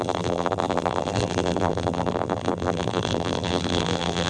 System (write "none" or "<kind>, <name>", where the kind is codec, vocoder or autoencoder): vocoder, BigVGAN v2